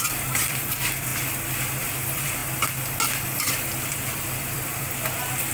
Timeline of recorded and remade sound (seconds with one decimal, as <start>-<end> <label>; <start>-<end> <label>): 0.0-1.1 remade; 1.1-1.8 recorded; 1.8-2.4 remade; 2.4-3.4 recorded; 3.4-5.5 remade